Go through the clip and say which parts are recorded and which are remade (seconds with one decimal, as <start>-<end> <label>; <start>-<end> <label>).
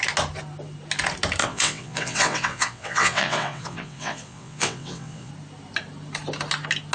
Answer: 0.0-1.4 recorded; 1.4-5.3 remade; 5.3-6.9 recorded